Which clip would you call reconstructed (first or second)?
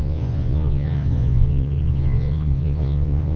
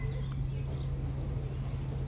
first